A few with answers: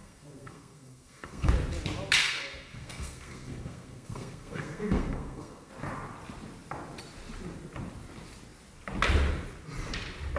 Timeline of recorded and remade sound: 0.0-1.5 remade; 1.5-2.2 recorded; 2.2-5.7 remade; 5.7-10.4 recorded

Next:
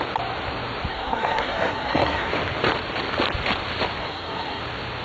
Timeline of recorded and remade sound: 0.0-0.9 recorded; 0.9-2.3 remade; 2.3-4.0 recorded; 4.0-4.6 remade; 4.6-5.0 recorded

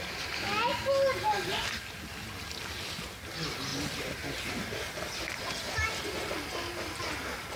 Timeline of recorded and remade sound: 0.0-7.6 recorded

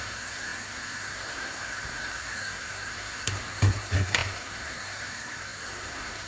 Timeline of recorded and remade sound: 0.0-6.3 remade

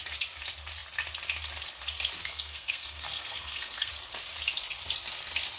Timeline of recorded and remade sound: 0.0-2.2 recorded; 2.2-3.9 remade; 3.9-5.6 recorded